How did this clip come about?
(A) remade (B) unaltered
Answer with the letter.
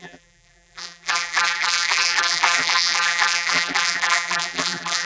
A